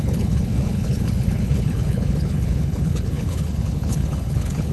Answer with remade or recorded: remade